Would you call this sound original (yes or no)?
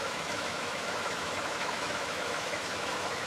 no